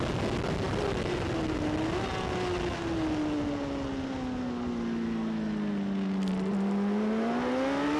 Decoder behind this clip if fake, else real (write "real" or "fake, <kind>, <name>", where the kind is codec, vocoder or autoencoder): real